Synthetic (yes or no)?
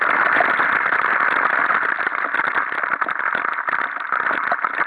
no